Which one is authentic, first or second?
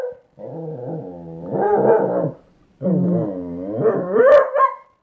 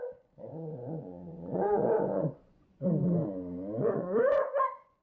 first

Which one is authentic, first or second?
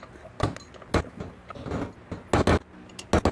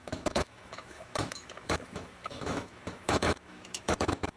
first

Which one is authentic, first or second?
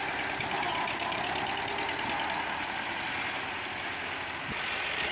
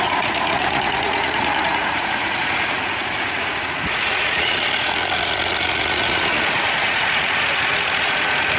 first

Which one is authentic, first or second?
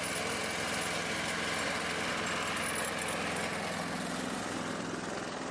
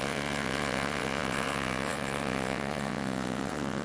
first